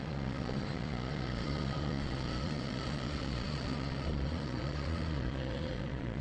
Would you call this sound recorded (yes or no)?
no